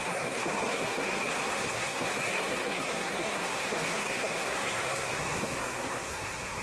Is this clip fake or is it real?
fake